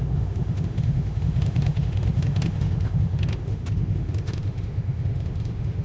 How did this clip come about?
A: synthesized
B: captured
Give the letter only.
A